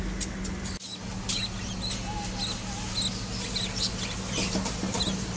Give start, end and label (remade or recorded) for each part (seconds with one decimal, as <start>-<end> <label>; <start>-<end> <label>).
0.0-5.4 recorded